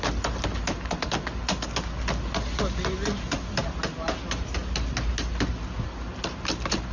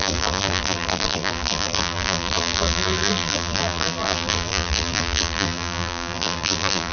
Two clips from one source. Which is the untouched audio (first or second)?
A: first